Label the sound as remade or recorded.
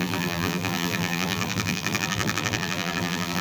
remade